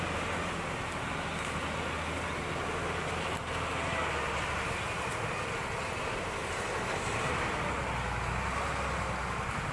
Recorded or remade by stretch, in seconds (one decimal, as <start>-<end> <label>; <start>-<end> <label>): 0.0-9.7 recorded